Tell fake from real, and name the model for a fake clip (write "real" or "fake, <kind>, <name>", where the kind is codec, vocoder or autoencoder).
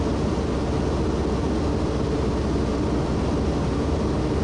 real